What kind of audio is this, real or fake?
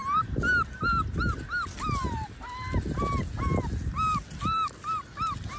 real